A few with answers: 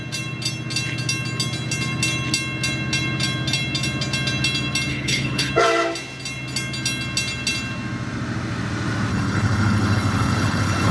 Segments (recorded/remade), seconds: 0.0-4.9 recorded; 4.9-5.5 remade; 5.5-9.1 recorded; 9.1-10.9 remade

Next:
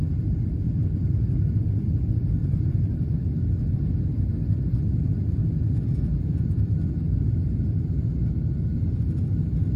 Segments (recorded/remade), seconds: 0.0-2.4 recorded; 2.4-3.1 remade; 3.1-9.8 recorded